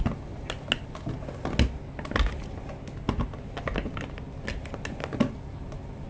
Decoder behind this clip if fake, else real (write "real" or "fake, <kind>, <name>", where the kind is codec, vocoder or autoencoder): real